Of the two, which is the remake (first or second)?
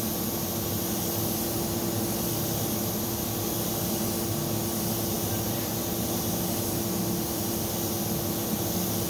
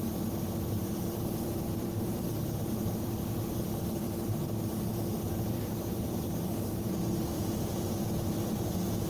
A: second